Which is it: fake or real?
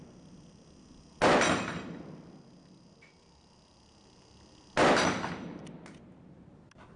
real